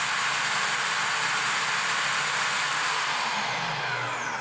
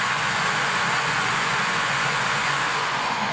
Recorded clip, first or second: first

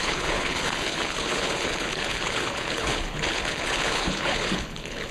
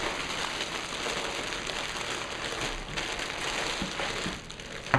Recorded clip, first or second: second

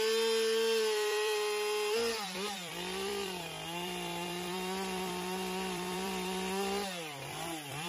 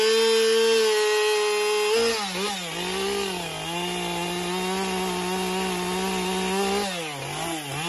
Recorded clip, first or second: second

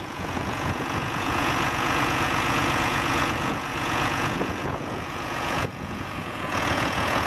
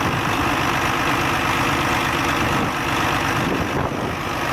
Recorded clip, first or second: second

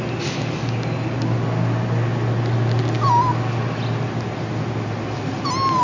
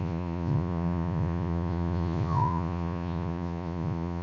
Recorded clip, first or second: first